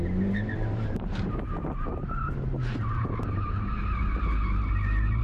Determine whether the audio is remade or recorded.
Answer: remade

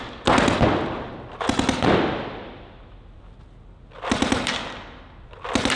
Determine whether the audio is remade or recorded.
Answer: recorded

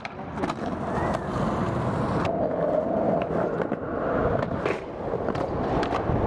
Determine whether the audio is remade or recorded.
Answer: remade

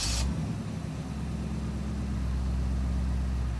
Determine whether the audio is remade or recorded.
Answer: recorded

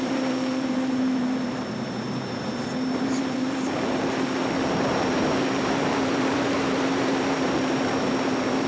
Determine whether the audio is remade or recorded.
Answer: remade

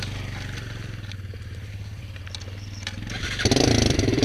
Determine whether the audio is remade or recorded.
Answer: remade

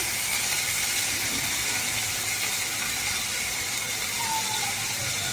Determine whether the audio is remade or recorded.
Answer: recorded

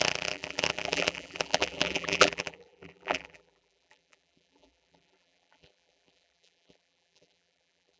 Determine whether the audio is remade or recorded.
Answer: remade